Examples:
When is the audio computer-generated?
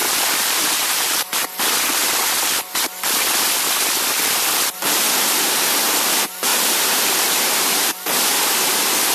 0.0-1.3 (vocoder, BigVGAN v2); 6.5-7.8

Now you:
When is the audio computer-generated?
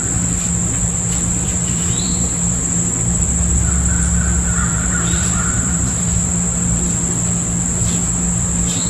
1.4-2.6 (vocoder, BigVGAN v2); 4.7-6.3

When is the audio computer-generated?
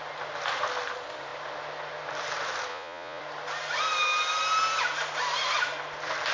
2.7-3.2 (vocoder, Vocos)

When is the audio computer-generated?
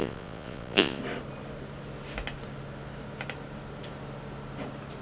0.0-1.0 (vocoder, Vocos)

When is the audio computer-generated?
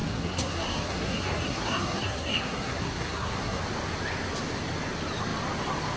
0.0-3.6 (codec, SNAC)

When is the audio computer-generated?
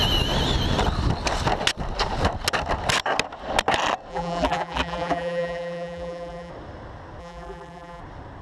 4.1-6.5 (vocoder, BigVGAN v2); 7.2-8.0